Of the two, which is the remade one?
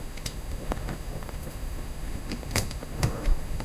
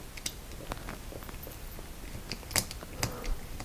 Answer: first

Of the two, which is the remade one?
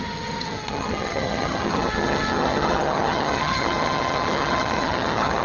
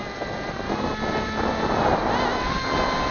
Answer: first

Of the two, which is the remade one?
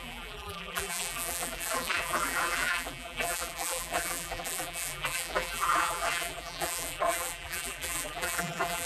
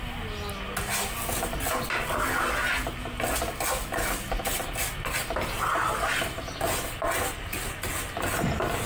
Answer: first